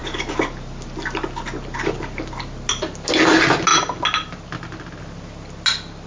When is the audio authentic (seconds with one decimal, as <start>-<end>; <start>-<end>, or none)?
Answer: 0.0-6.1